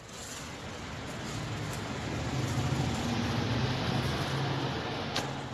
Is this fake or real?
real